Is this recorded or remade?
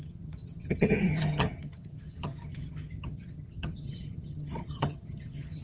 remade